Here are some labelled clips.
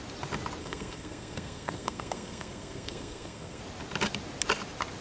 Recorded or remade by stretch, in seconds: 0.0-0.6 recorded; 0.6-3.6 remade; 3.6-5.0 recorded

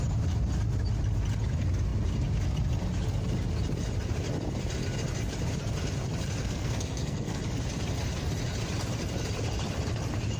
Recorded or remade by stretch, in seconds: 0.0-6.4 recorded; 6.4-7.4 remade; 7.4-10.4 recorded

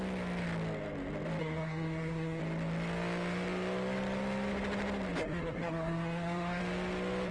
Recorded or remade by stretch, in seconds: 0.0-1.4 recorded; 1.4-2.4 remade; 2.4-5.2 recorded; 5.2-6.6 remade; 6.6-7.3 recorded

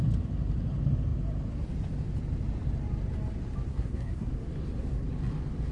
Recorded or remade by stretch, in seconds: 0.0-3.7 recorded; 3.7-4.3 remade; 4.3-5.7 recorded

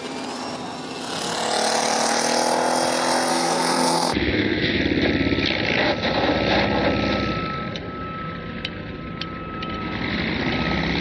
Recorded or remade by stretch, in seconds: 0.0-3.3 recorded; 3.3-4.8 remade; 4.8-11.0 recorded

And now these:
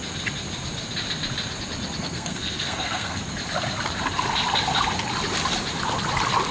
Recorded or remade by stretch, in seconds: 0.0-2.0 recorded; 2.0-3.2 remade; 3.2-6.5 recorded

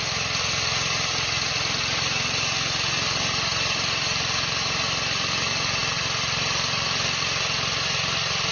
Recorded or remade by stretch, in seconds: 0.0-8.5 recorded